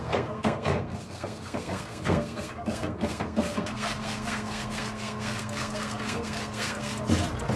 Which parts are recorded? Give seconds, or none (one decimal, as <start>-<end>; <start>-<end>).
6.9-7.6